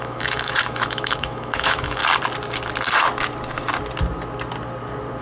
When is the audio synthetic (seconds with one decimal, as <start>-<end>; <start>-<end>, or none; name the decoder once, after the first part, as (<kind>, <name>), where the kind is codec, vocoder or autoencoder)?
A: 0.0-2.0 (autoencoder, DAC-VAE)